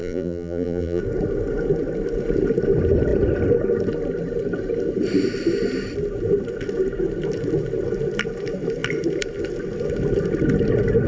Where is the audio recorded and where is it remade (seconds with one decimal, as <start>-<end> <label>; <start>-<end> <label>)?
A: 0.0-1.0 remade; 1.0-11.1 recorded